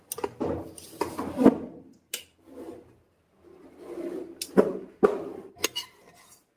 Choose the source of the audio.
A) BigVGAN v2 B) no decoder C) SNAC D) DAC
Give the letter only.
B